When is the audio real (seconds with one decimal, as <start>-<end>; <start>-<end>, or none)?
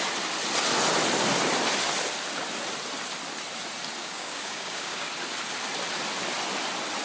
0.0-4.0; 5.1-7.0